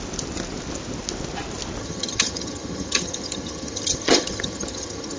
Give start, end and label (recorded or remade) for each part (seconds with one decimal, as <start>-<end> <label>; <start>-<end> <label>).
0.0-1.8 recorded; 1.8-5.2 remade